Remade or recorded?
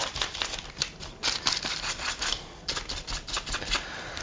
recorded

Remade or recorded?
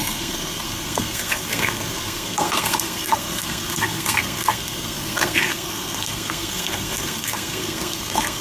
remade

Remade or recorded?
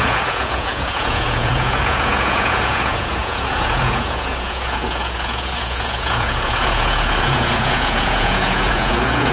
remade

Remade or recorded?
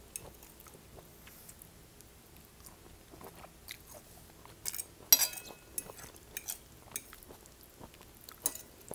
recorded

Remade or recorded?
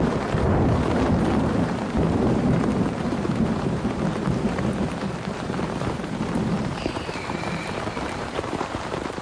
remade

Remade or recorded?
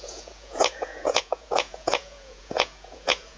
remade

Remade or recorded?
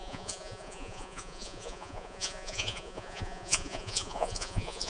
remade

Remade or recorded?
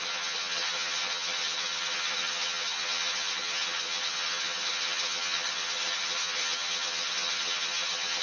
remade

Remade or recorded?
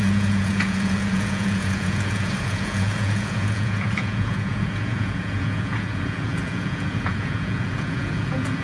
remade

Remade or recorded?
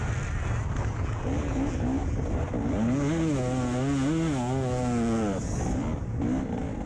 recorded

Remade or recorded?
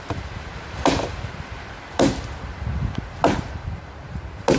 remade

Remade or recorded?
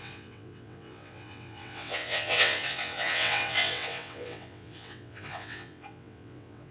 remade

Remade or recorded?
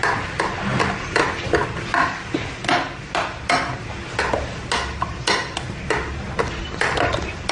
recorded